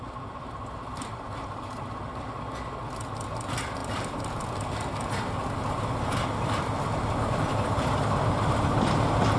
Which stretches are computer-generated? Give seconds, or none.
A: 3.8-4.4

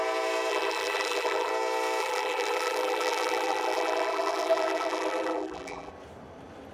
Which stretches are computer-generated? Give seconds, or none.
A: 0.5-1.5; 2.0-5.9

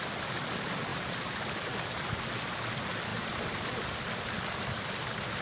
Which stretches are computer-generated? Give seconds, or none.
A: 0.9-2.2; 3.1-3.9